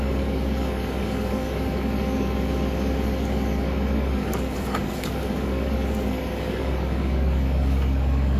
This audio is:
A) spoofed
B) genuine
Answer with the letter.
A